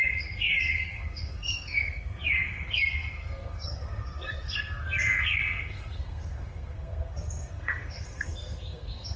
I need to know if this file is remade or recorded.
remade